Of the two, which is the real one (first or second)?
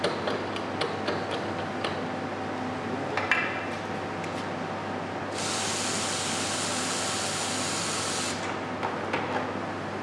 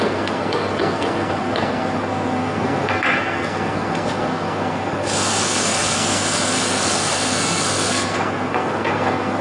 first